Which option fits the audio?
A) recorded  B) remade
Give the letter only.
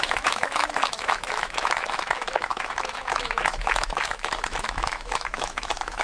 B